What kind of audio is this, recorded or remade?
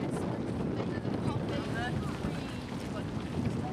recorded